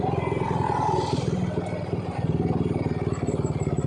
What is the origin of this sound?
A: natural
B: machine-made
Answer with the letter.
A